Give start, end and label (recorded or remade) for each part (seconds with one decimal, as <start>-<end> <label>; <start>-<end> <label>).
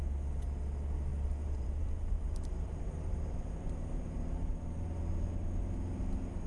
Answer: 0.0-1.1 recorded; 1.1-5.0 remade; 5.0-6.5 recorded